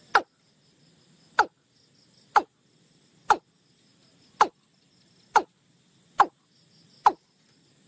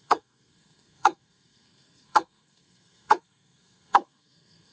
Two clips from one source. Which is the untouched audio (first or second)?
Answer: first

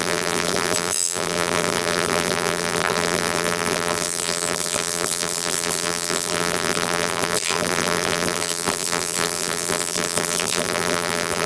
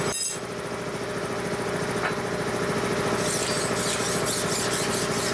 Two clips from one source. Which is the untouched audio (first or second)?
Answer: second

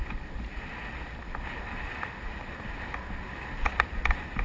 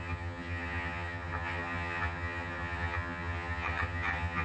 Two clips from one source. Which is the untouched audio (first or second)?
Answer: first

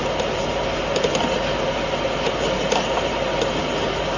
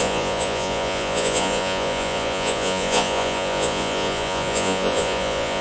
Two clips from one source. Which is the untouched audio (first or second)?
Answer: first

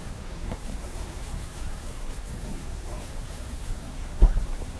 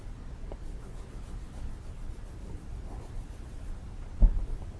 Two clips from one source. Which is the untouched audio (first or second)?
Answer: second